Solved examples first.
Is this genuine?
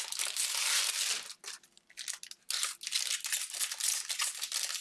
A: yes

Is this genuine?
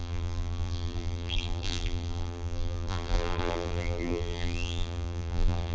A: no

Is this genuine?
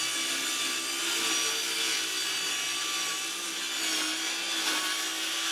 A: yes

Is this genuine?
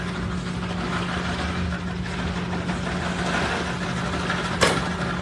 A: yes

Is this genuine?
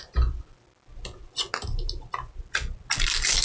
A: yes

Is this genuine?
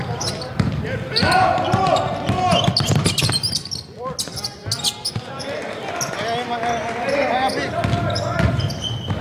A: yes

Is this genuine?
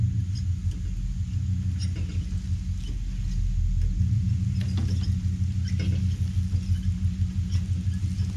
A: yes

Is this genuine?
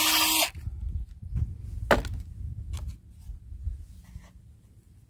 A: yes